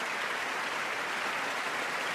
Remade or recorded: recorded